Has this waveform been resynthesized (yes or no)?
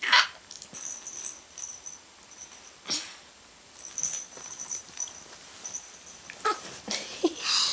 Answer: no